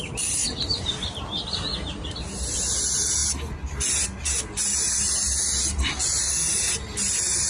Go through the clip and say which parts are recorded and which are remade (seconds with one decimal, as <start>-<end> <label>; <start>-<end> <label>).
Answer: 0.0-7.5 recorded